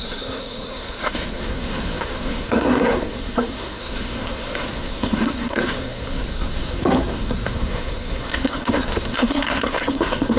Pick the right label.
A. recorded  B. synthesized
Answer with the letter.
B